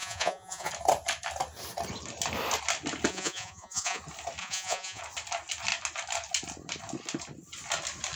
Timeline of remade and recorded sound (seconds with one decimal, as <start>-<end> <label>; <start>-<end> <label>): 0.0-0.7 remade; 0.7-3.1 recorded; 3.1-4.0 remade; 4.0-4.4 recorded; 4.4-5.0 remade; 5.0-8.2 recorded